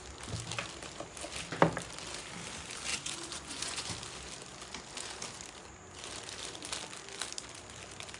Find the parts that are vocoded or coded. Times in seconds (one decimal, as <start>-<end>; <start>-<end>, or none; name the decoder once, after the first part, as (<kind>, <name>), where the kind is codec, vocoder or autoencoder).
2.9-3.9 (vocoder, Vocos)